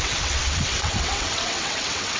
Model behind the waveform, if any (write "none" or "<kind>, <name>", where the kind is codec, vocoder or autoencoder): vocoder, WaveNeXt